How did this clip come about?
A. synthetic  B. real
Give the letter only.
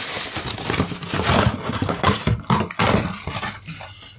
B